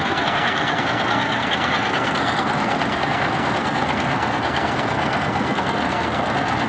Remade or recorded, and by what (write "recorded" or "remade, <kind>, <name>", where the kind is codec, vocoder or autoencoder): remade, codec, SNAC